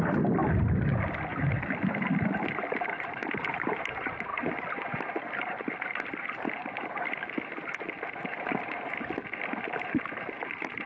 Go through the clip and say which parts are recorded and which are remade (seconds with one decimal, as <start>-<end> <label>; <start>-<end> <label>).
0.0-10.9 recorded